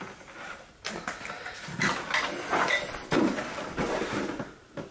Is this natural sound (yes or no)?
yes